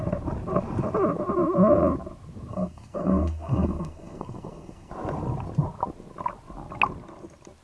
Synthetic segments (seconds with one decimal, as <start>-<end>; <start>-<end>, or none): 2.5-4.9